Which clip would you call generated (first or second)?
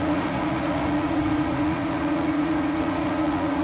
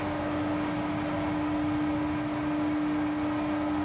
first